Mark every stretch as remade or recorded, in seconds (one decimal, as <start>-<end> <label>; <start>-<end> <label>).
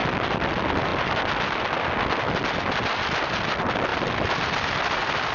0.0-5.3 recorded